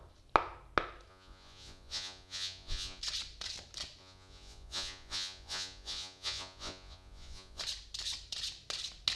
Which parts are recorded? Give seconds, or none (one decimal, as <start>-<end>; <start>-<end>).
0.0-1.1; 3.0-4.0; 7.6-9.2